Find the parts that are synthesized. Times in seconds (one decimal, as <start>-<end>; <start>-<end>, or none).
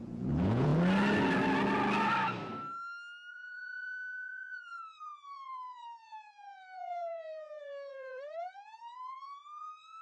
0.0-0.7; 3.3-10.0